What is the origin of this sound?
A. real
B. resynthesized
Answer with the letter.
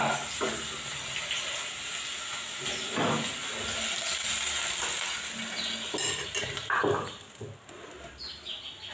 A